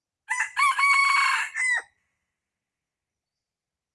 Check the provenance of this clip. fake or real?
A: real